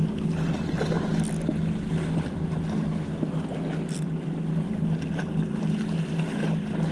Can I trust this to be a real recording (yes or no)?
yes